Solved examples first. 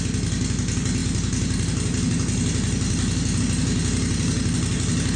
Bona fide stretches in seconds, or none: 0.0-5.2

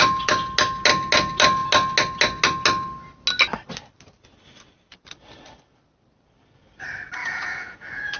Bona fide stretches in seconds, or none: 0.0-7.2

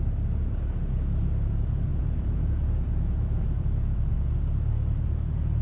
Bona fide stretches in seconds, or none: 0.0-1.9; 4.3-5.6

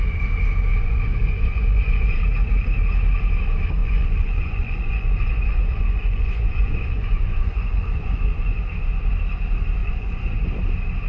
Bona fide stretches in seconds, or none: 0.0-0.7; 2.2-3.8; 8.6-9.8; 10.5-11.1